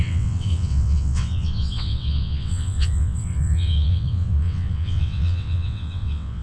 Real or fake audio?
fake